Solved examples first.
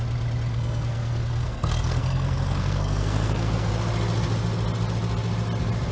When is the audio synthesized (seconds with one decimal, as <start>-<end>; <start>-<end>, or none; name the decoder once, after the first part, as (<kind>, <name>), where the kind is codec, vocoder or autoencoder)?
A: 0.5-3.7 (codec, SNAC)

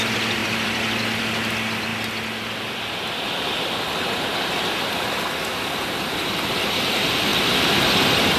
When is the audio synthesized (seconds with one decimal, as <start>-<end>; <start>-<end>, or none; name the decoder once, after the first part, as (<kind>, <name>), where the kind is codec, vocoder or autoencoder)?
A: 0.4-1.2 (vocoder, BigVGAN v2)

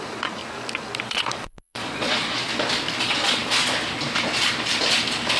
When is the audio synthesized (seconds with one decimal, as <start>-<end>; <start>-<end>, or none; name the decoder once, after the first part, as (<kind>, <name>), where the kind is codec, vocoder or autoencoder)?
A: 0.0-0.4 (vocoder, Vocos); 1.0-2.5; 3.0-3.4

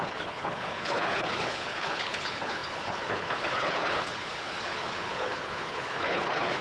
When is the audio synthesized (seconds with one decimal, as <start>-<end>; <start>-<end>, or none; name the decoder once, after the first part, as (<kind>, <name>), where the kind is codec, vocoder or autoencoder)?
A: 0.0-6.6 (codec, HILCodec)

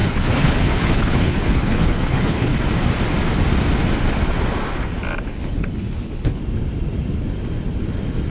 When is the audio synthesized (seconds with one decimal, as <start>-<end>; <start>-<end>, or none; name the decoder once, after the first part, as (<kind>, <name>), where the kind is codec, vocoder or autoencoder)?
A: 0.0-2.6 (codec, HILCodec); 5.3-6.4

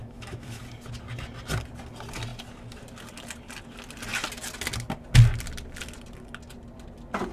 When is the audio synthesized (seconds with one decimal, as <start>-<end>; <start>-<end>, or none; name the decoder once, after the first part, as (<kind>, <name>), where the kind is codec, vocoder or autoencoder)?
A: 0.0-0.6 (autoencoder, DAC-VAE)

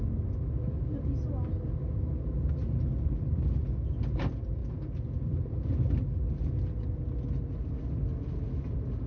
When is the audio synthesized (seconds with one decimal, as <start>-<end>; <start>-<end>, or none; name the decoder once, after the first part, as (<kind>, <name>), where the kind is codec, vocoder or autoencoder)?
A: none

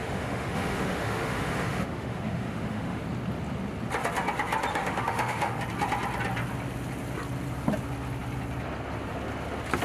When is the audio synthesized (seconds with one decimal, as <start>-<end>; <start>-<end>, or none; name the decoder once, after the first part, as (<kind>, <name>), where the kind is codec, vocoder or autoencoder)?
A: 0.0-3.0 (autoencoder, DAC-VAE); 4.7-5.6